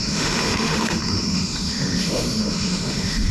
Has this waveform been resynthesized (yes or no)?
yes